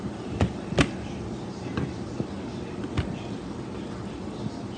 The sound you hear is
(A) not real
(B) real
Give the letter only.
A